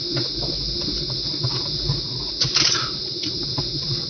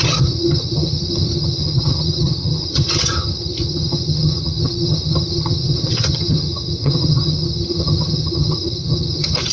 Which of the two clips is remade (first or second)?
second